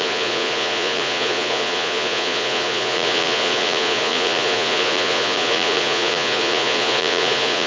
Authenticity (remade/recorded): remade